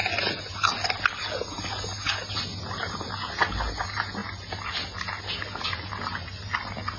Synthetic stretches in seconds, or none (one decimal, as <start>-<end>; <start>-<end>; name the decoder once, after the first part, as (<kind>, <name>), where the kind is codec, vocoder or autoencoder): none